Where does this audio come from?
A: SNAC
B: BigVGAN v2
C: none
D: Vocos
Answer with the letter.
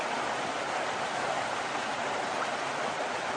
C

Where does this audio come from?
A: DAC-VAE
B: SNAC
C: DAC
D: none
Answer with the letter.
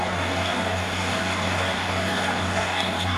C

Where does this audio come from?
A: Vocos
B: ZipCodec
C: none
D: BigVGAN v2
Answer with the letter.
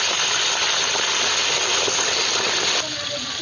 C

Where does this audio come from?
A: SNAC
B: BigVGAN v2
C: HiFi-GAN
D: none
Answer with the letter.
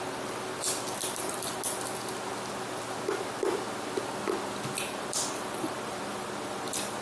D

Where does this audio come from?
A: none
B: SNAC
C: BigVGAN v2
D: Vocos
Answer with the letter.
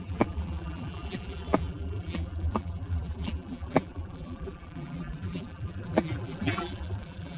C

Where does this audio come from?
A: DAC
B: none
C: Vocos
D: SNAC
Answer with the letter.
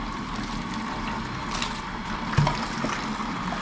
B